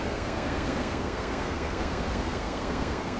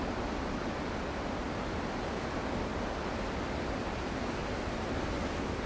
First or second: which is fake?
first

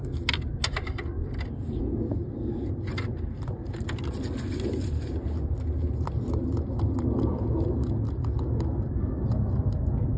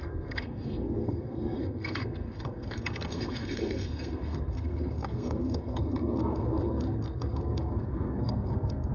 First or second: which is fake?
second